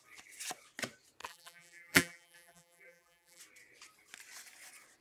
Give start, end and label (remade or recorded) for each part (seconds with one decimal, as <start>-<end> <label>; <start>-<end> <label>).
0.0-1.2 recorded; 1.2-3.4 remade; 3.4-5.0 recorded

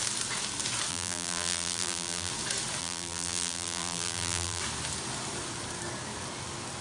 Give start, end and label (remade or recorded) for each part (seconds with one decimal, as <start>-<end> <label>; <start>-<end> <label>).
0.0-0.9 recorded; 0.9-2.3 remade; 2.3-2.8 recorded; 2.8-4.6 remade; 4.6-6.8 recorded

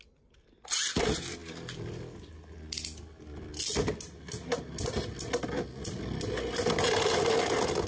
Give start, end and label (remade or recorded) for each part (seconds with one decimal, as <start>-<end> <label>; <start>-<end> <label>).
0.0-7.9 recorded

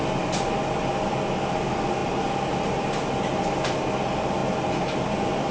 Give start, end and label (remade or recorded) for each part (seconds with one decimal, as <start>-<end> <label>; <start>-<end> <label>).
0.0-5.5 recorded